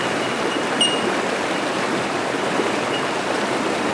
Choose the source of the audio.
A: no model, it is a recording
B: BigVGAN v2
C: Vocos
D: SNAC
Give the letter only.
A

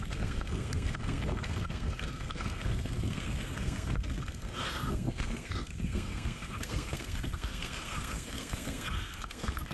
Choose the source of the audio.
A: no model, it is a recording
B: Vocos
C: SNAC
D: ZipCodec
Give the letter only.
C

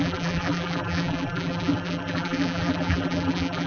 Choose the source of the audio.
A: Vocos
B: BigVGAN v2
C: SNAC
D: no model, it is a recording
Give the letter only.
B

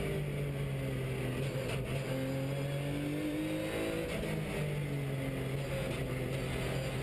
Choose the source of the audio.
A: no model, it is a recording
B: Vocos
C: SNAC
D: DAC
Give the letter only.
A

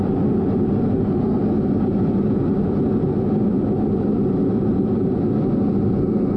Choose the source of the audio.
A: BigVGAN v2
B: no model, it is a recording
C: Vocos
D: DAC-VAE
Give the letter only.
B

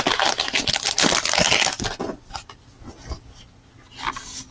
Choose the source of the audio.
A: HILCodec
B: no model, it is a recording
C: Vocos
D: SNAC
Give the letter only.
B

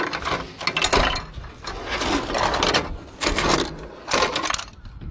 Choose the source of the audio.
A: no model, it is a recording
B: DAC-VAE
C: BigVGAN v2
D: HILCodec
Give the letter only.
A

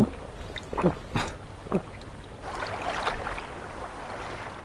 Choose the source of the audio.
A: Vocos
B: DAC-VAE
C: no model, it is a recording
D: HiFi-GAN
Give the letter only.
C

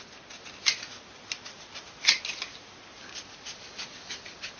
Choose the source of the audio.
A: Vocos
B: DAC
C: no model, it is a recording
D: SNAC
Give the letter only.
C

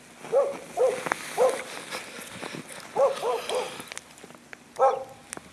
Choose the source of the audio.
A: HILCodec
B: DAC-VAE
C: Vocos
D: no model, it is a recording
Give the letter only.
D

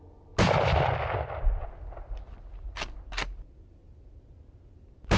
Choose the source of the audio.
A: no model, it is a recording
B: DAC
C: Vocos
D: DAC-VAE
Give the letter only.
A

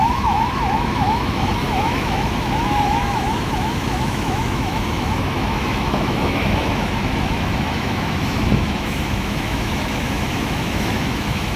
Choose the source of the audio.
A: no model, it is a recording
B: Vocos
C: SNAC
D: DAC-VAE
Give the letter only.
D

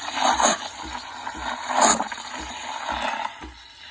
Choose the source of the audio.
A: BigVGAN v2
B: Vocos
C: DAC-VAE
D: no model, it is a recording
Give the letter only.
D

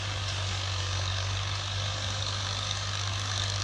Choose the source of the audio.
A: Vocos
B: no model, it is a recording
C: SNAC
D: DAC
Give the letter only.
D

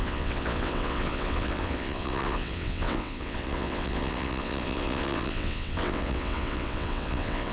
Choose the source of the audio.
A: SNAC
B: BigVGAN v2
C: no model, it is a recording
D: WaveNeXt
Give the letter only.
D